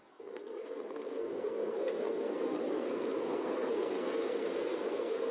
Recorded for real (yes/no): no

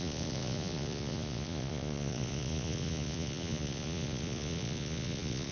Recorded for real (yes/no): no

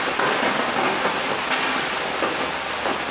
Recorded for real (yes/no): yes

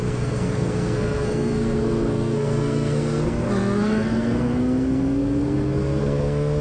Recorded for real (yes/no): no